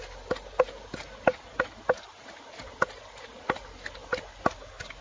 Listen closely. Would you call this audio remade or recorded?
recorded